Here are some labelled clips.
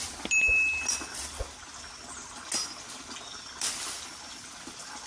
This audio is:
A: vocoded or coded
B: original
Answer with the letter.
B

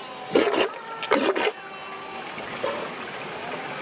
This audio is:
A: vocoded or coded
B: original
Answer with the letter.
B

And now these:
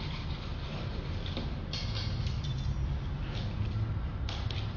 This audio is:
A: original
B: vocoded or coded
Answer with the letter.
A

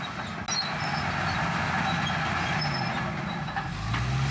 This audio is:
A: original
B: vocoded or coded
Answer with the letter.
A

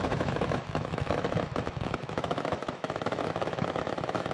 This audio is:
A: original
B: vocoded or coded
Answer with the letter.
B